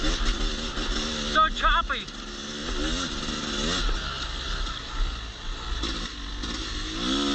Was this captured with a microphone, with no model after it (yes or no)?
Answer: yes